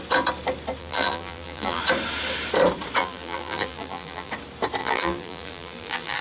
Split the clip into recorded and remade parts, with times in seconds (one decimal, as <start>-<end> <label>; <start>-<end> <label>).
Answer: 0.0-0.8 recorded; 0.8-1.8 remade; 1.8-3.0 recorded; 3.0-4.3 remade; 4.3-4.8 recorded; 4.8-6.2 remade